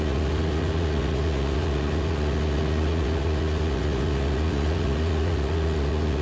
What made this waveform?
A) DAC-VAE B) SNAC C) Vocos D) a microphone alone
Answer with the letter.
C